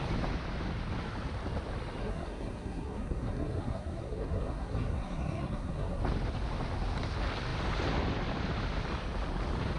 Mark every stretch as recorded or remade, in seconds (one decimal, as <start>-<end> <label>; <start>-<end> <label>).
0.0-2.0 recorded; 2.0-6.0 remade; 6.0-9.8 recorded

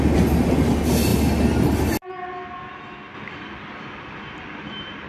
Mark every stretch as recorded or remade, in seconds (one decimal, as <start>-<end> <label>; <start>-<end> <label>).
0.0-5.1 recorded